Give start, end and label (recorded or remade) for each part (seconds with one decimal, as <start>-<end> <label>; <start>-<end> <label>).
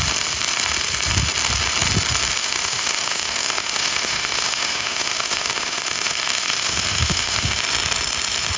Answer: 0.0-2.4 recorded; 2.4-7.6 remade; 7.6-8.6 recorded